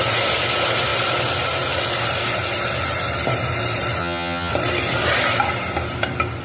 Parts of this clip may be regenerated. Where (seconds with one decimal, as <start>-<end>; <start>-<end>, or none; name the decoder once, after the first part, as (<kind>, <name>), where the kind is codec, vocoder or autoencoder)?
4.0-4.5 (vocoder, HiFi-GAN)